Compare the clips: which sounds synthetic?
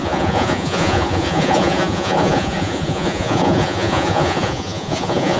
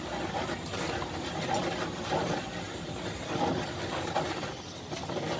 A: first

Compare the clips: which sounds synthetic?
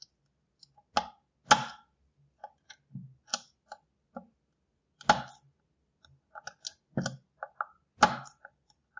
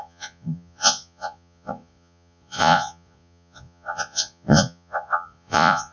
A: second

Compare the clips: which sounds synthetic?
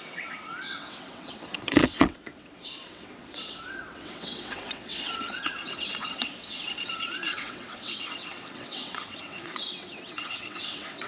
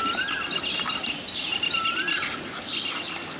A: first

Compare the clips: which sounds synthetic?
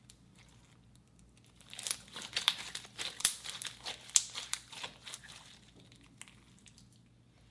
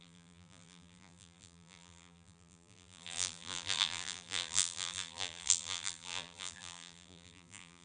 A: second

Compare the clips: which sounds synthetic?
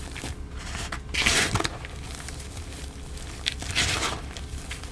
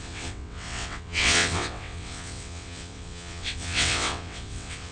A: second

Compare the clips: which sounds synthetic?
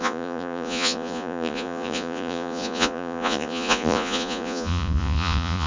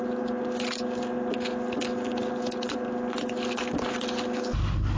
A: first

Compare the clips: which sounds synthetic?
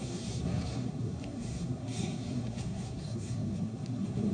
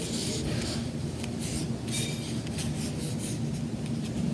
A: first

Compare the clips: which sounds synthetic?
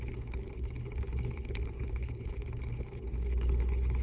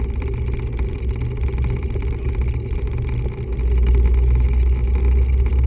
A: first